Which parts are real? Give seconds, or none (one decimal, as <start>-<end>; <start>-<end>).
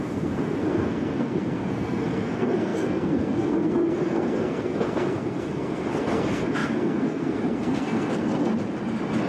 8.5-9.3